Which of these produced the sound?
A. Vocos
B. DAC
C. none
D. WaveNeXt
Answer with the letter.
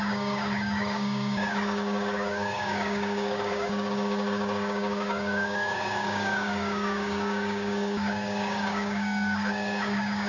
B